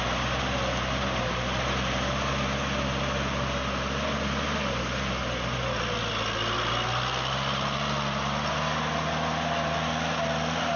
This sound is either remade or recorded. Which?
recorded